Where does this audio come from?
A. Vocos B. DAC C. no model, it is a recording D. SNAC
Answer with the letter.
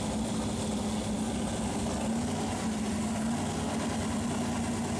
C